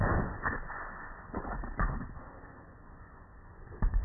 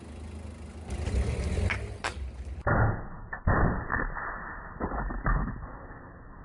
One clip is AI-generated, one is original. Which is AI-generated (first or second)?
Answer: first